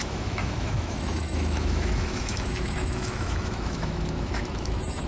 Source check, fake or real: fake